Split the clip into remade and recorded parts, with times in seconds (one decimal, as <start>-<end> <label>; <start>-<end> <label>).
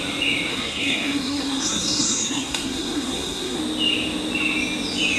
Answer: 0.0-0.5 recorded; 0.5-3.6 remade; 3.6-5.2 recorded